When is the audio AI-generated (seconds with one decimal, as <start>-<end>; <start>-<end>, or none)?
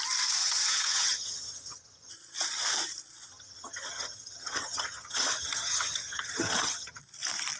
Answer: 0.4-2.1; 3.3-7.0